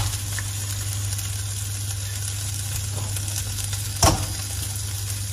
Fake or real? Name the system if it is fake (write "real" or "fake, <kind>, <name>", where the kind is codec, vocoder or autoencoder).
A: real